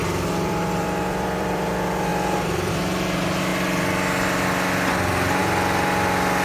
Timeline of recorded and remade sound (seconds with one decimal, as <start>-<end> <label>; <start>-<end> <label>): 0.0-1.7 remade; 1.7-2.1 recorded; 2.1-2.7 remade; 2.7-6.4 recorded